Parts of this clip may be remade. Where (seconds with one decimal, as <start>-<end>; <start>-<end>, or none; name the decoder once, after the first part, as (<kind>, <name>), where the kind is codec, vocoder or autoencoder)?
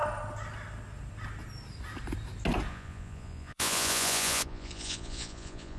2.7-5.8 (vocoder, Vocos)